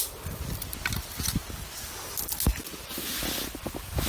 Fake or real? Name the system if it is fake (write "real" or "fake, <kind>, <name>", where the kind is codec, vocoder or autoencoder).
real